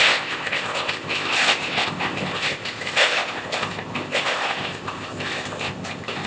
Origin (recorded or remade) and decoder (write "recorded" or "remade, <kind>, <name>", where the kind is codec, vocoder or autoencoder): remade, codec, ZipCodec